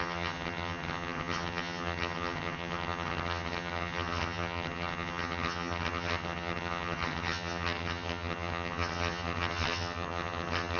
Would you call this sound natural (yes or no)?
no